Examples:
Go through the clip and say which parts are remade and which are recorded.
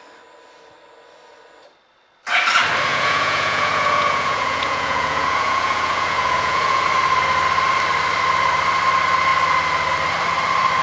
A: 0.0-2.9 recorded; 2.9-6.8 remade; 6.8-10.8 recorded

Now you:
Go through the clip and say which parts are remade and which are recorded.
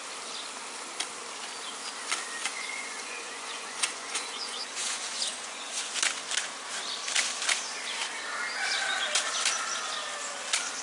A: 0.0-2.4 recorded; 2.4-5.9 remade; 5.9-10.8 recorded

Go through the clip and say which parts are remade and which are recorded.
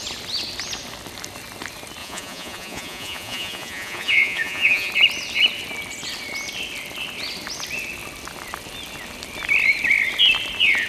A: 0.0-2.0 recorded; 2.0-4.9 remade; 4.9-10.9 recorded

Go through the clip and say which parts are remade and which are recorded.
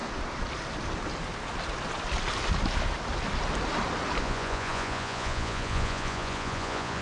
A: 0.0-4.2 recorded; 4.2-7.0 remade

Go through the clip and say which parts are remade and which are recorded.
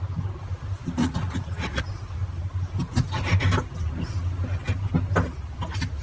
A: 0.0-1.0 recorded; 1.0-1.8 remade; 1.8-6.0 recorded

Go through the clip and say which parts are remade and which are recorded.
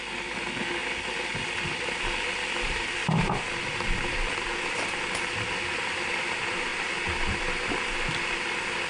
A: 0.0-8.9 recorded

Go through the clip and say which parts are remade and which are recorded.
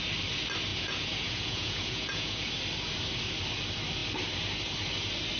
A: 0.0-0.7 recorded; 0.7-2.5 remade; 2.5-5.4 recorded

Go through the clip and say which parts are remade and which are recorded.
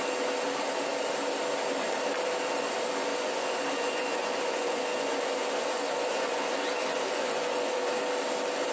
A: 0.0-3.1 recorded; 3.1-7.9 remade; 7.9-8.7 recorded